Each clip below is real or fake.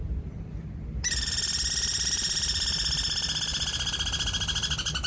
real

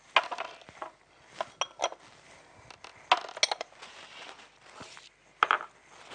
real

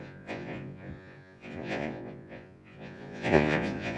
fake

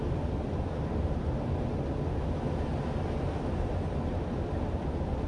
real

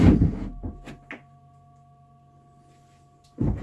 real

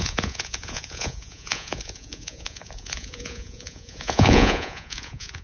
fake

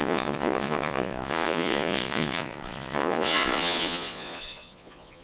fake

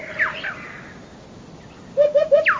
real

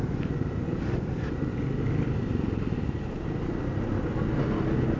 real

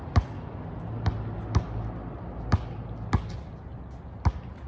real